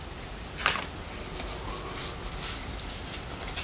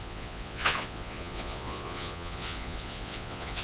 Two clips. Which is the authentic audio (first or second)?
first